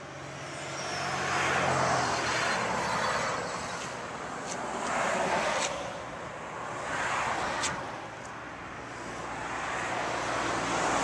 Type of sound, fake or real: real